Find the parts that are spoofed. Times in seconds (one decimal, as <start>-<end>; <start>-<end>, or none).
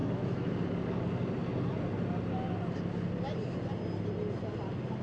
0.0-0.5